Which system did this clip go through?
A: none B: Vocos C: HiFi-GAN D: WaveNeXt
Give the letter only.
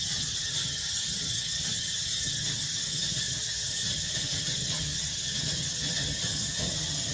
C